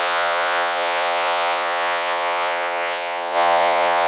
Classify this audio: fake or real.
fake